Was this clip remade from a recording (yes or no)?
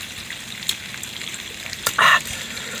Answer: no